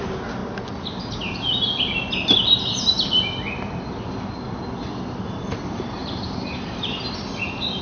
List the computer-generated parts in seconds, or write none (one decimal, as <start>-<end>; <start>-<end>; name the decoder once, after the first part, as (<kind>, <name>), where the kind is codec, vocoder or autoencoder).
0.0-0.4 (vocoder, BigVGAN v2); 4.8-7.8